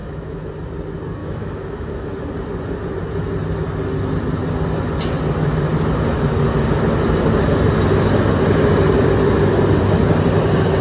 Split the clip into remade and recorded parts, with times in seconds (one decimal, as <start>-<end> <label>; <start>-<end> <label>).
0.0-0.5 remade; 0.5-1.2 recorded; 1.2-2.1 remade; 2.1-10.8 recorded